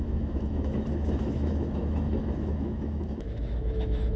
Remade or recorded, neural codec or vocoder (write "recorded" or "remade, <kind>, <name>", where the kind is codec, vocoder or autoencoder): remade, autoencoder, DAC-VAE